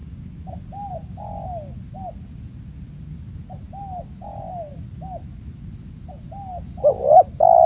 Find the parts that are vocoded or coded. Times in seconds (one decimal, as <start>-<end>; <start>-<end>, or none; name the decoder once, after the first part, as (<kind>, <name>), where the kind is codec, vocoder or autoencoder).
none